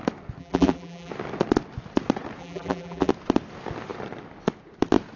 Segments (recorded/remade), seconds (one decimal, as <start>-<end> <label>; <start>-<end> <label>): 0.0-0.4 recorded; 0.4-1.1 remade; 1.1-2.4 recorded; 2.4-3.1 remade; 3.1-5.2 recorded